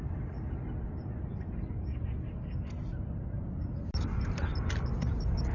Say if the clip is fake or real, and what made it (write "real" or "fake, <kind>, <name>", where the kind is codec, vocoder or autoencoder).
real